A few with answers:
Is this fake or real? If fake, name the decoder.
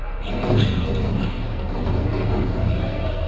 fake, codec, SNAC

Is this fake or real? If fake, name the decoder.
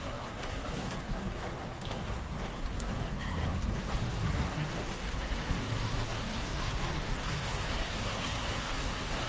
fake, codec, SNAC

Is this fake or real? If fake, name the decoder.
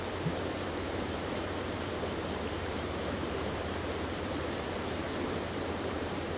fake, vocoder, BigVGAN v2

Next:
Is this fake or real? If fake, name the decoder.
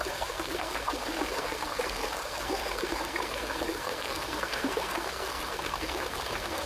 fake, codec, SNAC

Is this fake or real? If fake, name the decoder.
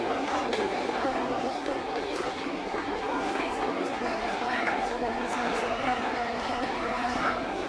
fake, codec, SNAC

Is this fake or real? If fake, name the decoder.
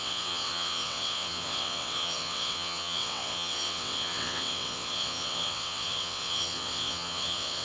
fake, vocoder, WaveNeXt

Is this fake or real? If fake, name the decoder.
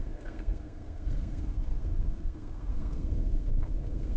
fake, codec, SNAC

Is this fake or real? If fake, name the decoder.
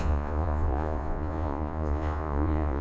fake, vocoder, Vocos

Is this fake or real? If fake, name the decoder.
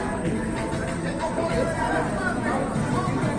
real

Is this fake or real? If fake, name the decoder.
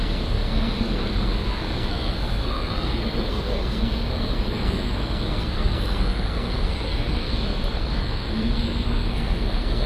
fake, codec, SNAC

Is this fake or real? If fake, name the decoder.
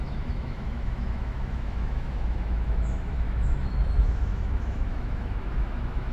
fake, autoencoder, DAC-VAE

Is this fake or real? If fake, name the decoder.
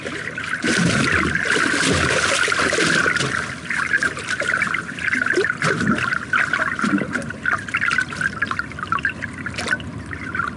real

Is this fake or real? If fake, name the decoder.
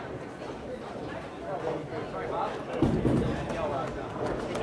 real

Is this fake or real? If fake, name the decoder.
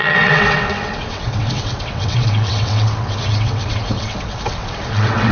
fake, vocoder, WaveNeXt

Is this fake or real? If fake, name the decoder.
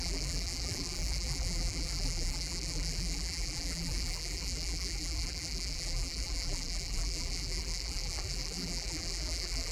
fake, vocoder, BigVGAN v2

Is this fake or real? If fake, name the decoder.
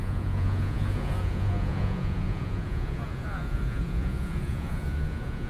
fake, vocoder, Vocos